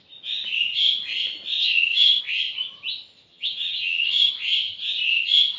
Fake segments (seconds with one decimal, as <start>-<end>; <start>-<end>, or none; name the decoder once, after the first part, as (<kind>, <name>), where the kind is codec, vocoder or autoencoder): 1.6-2.2 (vocoder, HiFi-GAN); 3.3-4.3